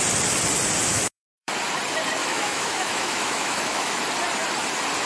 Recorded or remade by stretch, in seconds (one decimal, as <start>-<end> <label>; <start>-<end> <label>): 0.0-0.9 recorded; 0.9-1.5 remade; 1.5-2.2 recorded; 2.2-4.0 remade; 4.0-5.1 recorded